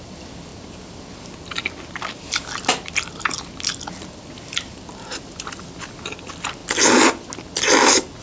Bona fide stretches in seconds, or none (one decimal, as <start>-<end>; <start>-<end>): 0.0-8.2